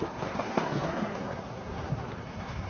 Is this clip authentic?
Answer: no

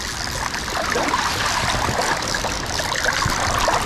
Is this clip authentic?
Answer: yes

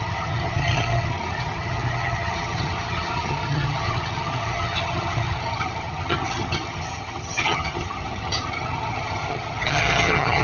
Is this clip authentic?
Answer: no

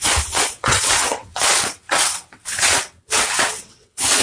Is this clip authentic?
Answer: no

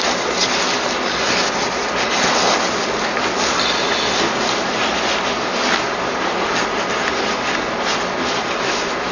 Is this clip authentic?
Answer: yes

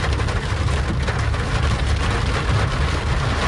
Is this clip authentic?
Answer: yes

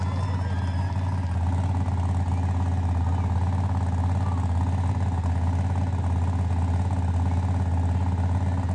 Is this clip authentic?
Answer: yes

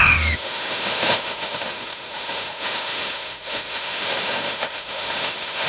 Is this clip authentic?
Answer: no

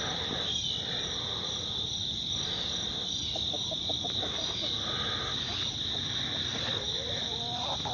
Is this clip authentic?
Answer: yes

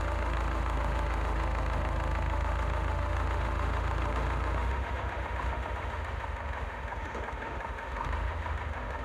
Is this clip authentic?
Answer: no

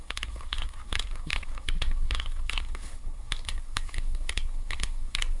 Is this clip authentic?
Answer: no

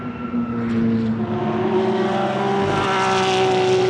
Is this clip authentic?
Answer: yes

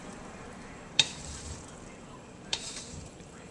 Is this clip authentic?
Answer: no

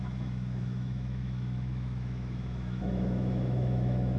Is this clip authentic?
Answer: no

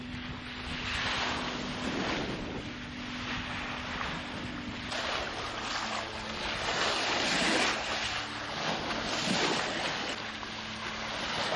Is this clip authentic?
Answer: yes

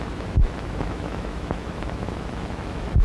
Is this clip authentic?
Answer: no